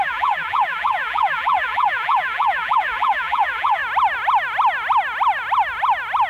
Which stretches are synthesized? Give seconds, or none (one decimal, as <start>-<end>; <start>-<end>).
0.0-3.8